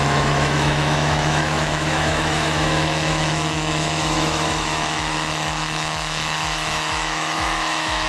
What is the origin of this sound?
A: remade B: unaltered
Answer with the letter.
A